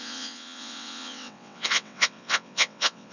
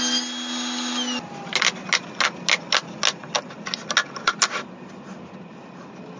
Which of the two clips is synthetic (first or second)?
first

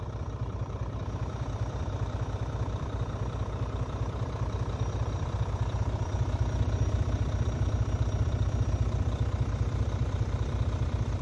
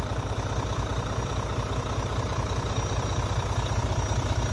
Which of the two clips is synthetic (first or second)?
first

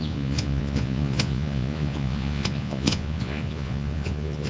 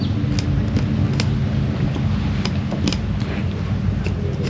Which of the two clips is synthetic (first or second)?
first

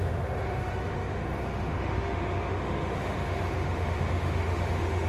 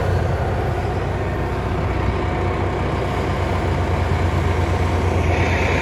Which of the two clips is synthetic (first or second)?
first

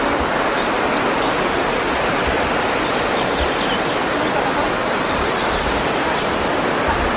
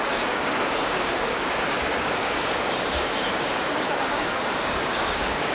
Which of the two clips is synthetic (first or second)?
second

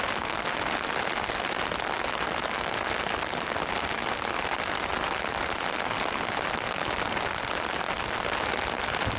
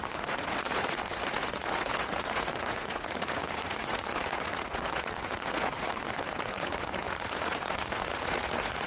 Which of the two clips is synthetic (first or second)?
second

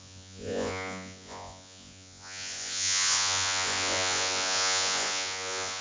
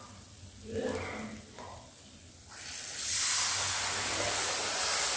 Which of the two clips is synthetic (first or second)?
first